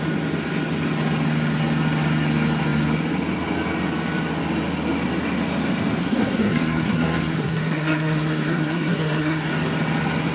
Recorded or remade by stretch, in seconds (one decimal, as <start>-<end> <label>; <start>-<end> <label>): 0.0-6.0 recorded; 6.0-9.5 remade; 9.5-10.3 recorded